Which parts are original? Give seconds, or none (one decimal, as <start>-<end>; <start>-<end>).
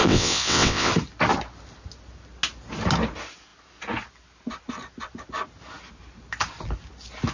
0.9-7.3